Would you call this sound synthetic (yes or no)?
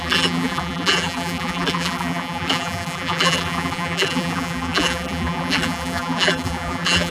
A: yes